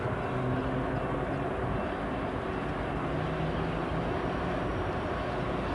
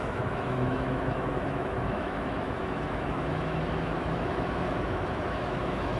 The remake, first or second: second